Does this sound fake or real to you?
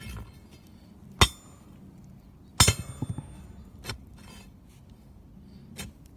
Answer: real